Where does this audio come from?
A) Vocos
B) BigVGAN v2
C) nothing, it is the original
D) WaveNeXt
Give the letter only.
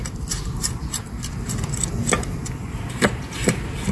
B